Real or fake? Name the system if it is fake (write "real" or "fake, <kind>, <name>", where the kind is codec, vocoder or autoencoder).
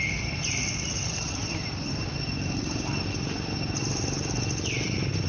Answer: real